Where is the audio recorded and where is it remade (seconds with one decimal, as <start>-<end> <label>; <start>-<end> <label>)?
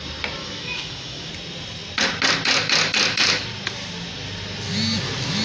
0.0-0.4 recorded; 0.4-1.3 remade; 1.3-5.4 recorded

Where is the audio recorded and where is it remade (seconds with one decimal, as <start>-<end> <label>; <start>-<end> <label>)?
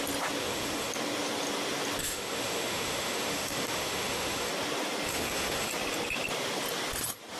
0.0-0.4 recorded; 0.4-0.9 remade; 0.9-2.0 recorded; 2.0-4.5 remade; 4.5-5.1 recorded; 5.1-5.7 remade; 5.7-7.4 recorded